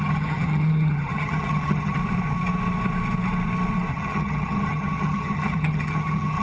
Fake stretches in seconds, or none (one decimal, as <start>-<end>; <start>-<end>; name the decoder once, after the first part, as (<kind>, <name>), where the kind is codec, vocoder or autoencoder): 0.0-2.0 (vocoder, HiFi-GAN); 3.9-6.4